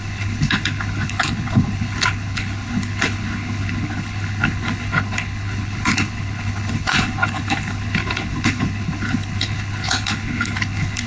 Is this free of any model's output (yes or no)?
no